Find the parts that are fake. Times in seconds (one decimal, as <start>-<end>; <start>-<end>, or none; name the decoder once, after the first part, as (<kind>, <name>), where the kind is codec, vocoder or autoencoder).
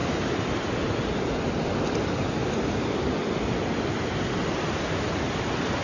none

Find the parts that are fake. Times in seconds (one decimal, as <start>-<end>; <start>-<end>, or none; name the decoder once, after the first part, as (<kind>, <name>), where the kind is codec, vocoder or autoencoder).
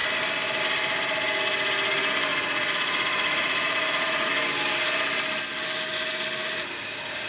2.3-4.3 (vocoder, Vocos)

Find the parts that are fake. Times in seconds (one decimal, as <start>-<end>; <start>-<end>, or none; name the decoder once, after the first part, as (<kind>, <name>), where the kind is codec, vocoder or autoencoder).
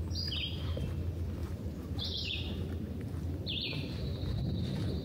1.4-4.4 (vocoder, BigVGAN v2)